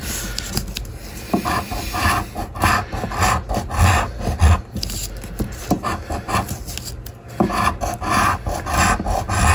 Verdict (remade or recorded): recorded